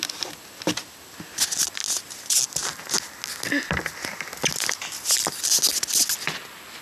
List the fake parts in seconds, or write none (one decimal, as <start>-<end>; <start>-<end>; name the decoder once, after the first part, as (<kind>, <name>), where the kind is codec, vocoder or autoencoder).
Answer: none